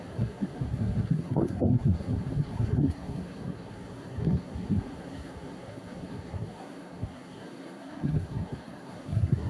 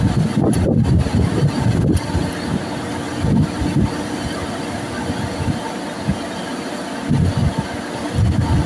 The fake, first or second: first